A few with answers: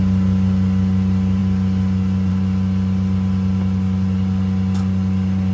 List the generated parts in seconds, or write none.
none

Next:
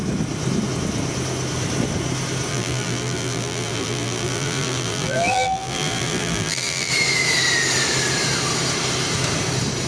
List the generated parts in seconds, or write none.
2.5-6.9 (vocoder, BigVGAN v2)

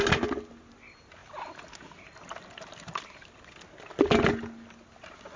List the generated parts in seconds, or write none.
none